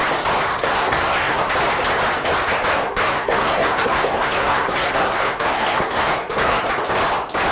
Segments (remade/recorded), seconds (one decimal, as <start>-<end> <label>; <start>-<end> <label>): 0.0-0.5 recorded; 0.5-1.5 remade; 1.5-2.7 recorded; 2.7-6.6 remade; 6.6-7.5 recorded